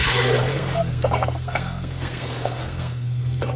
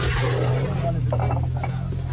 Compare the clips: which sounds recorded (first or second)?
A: second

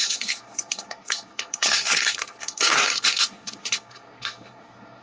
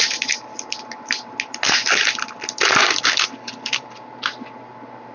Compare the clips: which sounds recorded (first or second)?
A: second